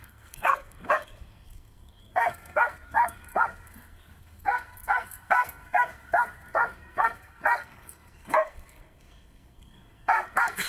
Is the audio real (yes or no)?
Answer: no